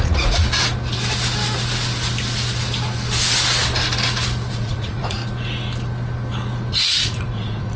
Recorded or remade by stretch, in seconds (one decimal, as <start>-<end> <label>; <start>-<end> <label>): 0.0-0.4 remade; 0.4-4.5 recorded; 4.5-5.2 remade; 5.2-6.7 recorded; 6.7-7.8 remade